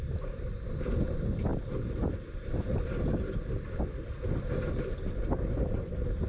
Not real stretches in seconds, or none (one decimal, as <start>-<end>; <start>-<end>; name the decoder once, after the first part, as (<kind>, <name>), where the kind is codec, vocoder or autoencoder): none